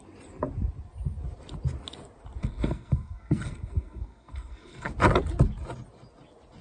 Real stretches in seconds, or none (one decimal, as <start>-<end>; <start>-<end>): 0.0-2.4; 4.9-6.6